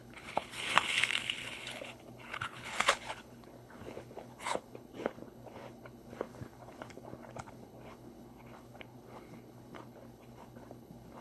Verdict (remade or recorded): remade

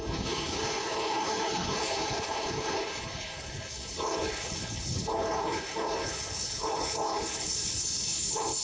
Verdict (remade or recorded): remade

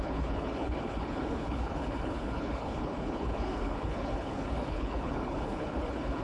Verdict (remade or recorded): remade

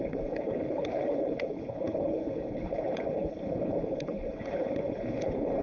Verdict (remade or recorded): remade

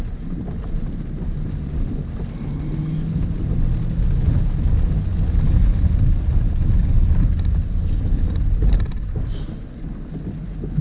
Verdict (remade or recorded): recorded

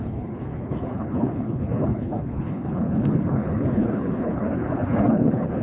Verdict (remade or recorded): remade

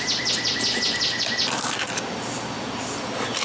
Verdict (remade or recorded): recorded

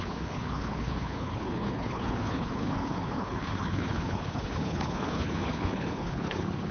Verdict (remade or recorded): remade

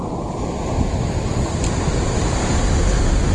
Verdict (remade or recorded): recorded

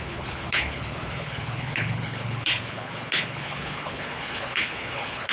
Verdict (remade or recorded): remade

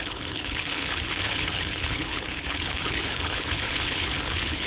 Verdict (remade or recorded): remade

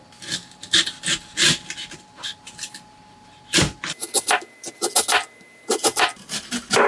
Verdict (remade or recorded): recorded